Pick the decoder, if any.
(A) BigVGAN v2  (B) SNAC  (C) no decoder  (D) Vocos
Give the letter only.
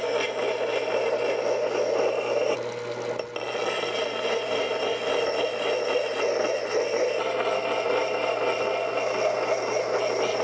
C